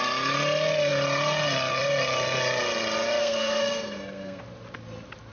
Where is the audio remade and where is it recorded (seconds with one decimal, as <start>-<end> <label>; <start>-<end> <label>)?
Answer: 0.0-3.2 recorded; 3.2-4.4 remade; 4.4-5.3 recorded